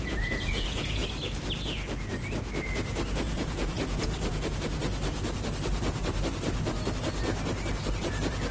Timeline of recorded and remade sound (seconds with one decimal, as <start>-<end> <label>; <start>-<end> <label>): 0.0-1.0 remade; 1.0-3.1 recorded; 3.1-4.8 remade; 4.8-8.0 recorded; 8.0-8.5 remade